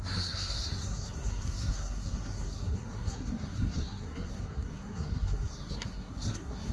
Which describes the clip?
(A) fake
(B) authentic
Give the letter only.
A